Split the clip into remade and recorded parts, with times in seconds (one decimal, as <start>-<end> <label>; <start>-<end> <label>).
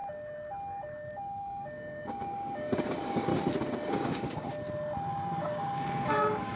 0.0-1.1 recorded; 1.1-3.3 remade; 3.3-3.9 recorded; 3.9-4.5 remade; 4.5-5.1 recorded; 5.1-6.6 remade